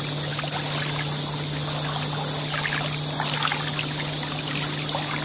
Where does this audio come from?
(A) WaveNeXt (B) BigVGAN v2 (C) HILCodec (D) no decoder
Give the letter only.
D